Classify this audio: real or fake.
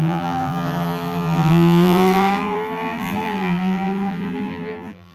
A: fake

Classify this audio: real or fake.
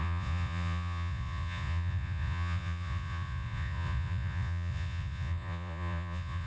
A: fake